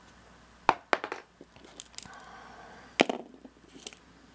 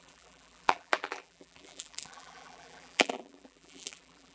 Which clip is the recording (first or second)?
first